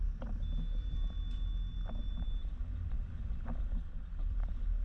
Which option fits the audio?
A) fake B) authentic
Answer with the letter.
B